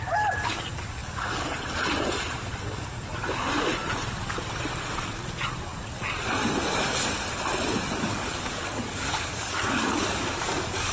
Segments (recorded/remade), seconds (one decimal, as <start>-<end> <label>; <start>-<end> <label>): 0.0-8.1 recorded; 8.1-10.9 remade